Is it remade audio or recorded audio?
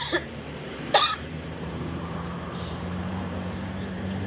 remade